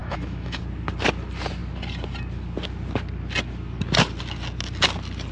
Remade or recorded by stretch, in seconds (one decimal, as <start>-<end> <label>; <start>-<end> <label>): 0.0-0.6 remade; 0.6-5.3 recorded